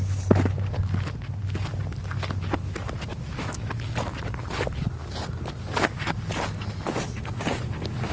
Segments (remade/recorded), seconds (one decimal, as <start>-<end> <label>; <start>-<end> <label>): 0.0-3.1 recorded; 3.1-3.7 remade; 3.7-8.1 recorded